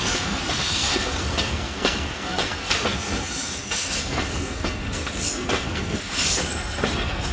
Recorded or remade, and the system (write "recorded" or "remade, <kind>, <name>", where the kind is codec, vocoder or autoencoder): remade, codec, SNAC